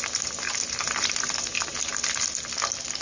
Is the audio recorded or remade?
recorded